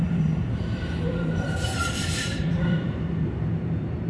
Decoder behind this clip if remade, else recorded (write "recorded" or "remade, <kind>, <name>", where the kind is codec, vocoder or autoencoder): remade, vocoder, BigVGAN v2